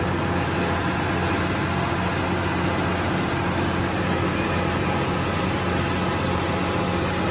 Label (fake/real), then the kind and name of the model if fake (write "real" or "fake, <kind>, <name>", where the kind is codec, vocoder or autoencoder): real